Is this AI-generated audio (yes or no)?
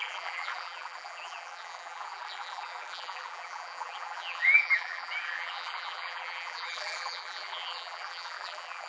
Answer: yes